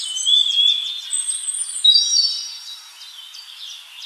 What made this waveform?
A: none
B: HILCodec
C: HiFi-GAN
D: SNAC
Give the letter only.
A